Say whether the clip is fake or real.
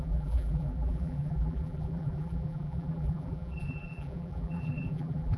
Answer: fake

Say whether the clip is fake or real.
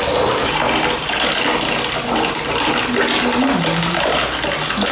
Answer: real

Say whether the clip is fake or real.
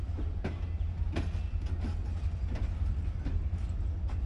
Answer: real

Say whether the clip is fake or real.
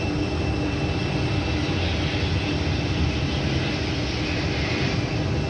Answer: real